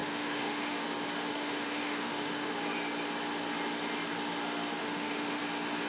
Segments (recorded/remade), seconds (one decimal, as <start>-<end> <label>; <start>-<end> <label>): 0.0-0.8 remade; 0.8-1.3 recorded; 1.3-2.5 remade; 2.5-4.8 recorded; 4.8-5.4 remade; 5.4-5.9 recorded